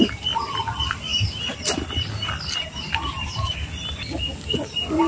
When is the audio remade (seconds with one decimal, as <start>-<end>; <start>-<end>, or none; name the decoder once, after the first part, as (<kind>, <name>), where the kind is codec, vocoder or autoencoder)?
none